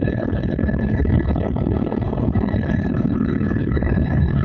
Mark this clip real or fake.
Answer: fake